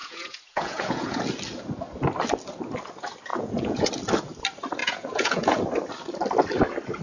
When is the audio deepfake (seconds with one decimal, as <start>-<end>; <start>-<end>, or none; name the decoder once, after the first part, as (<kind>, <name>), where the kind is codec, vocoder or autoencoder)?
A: 0.0-1.2 (vocoder, Vocos); 3.3-3.9; 4.8-5.6